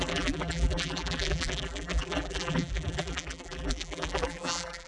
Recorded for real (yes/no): no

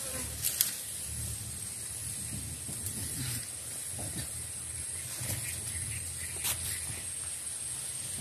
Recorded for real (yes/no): yes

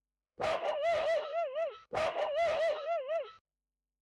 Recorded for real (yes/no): no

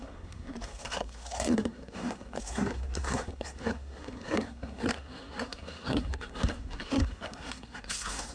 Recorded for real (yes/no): no